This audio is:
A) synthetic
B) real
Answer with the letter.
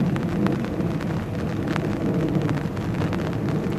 A